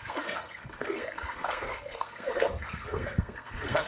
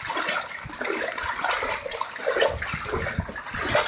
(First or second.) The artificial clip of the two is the first